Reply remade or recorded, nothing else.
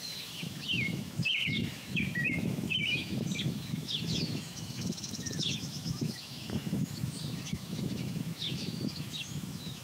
remade